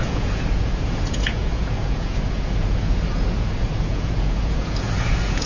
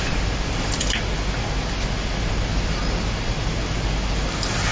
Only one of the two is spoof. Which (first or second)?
first